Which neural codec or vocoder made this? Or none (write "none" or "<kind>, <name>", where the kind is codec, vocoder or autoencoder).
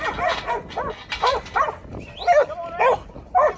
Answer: none